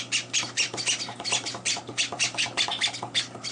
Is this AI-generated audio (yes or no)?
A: no